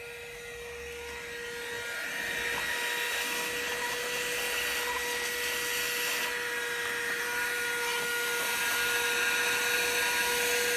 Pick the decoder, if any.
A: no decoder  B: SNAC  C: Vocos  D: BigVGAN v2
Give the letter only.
A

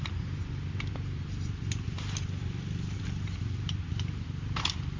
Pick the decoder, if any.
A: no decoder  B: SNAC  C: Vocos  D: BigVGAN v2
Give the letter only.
A